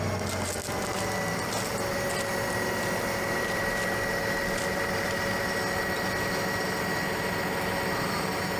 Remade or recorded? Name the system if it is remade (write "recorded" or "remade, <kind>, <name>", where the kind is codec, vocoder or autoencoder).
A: recorded